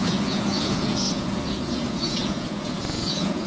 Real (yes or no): no